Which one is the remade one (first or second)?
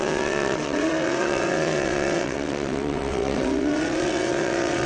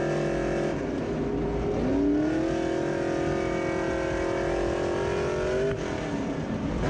first